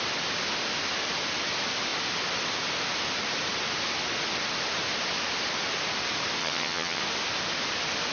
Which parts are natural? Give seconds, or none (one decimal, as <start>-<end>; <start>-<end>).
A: 0.0-6.4; 7.0-8.1